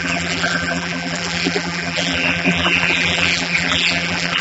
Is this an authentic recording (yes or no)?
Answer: no